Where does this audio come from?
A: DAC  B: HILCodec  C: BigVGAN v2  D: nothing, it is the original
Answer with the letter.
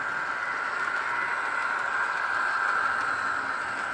D